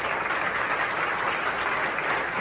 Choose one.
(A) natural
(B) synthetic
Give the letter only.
A